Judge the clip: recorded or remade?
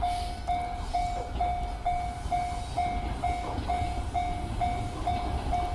recorded